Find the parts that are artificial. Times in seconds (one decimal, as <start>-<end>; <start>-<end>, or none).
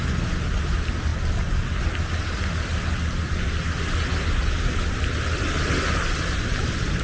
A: none